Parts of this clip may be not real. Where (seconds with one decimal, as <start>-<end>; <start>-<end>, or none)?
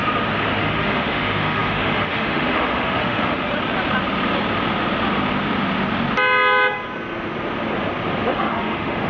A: 0.6-3.5; 8.3-9.1